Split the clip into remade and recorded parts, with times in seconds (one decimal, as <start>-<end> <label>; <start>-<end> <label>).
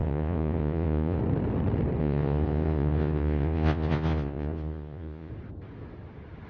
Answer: 0.0-1.2 remade; 1.2-2.0 recorded; 2.0-5.3 remade; 5.3-6.5 recorded